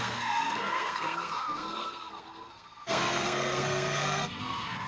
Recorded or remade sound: remade